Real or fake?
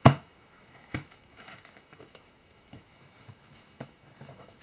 fake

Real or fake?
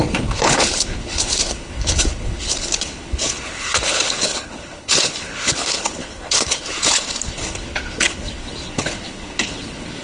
fake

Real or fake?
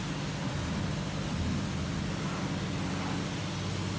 real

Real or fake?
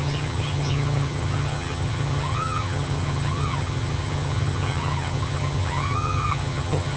fake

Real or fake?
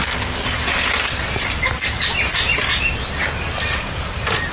real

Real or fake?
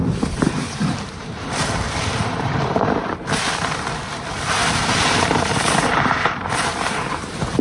fake